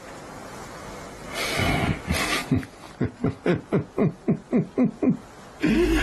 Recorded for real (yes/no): yes